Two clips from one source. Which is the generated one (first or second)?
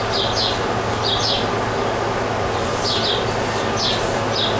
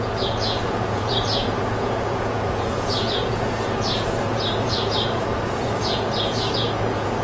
second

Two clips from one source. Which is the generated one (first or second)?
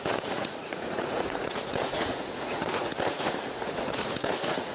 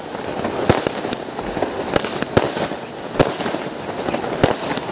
first